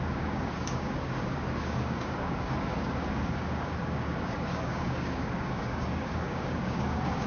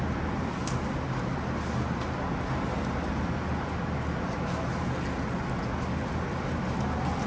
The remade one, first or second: first